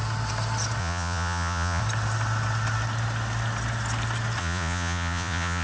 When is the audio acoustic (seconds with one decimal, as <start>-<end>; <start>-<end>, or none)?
0.0-0.8; 1.8-4.4